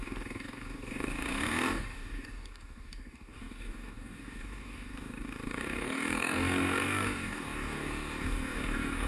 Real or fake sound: fake